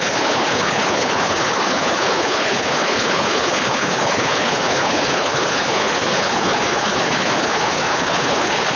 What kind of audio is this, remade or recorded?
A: remade